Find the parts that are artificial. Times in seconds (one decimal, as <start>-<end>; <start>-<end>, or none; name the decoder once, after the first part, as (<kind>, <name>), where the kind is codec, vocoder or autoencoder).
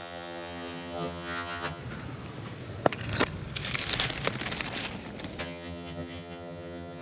0.0-1.8 (vocoder, HiFi-GAN); 5.4-7.0